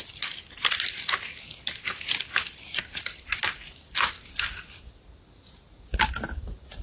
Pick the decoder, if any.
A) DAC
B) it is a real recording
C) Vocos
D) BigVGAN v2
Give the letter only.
B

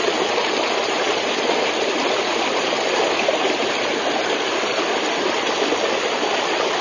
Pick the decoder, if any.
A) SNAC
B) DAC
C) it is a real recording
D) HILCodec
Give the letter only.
C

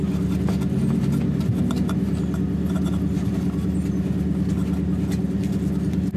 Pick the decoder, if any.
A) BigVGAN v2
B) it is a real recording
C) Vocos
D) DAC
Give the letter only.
B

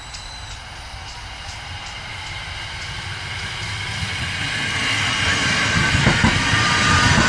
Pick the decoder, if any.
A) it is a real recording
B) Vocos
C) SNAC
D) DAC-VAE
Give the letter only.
A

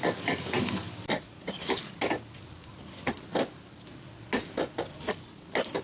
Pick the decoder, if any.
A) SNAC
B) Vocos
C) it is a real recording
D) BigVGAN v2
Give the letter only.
C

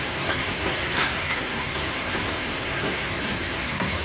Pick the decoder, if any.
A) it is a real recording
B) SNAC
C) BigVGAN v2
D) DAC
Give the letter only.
B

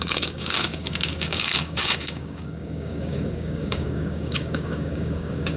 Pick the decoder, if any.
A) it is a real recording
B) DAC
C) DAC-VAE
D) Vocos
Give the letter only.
B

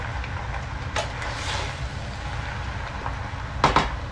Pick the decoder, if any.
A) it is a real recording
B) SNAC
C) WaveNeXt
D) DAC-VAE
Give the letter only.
A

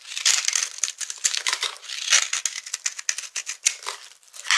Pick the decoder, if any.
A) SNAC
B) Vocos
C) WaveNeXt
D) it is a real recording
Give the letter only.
D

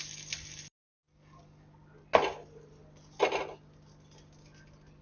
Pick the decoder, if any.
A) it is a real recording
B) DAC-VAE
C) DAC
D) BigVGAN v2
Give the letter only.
A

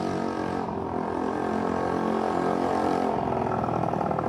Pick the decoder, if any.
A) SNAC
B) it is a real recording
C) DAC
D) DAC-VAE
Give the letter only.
B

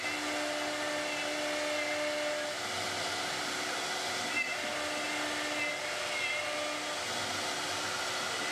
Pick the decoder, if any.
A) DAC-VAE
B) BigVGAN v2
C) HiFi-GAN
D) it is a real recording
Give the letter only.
D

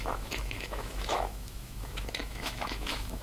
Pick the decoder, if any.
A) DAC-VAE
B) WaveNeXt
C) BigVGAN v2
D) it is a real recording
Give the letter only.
A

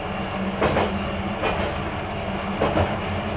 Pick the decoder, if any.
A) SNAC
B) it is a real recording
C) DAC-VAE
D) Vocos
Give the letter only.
B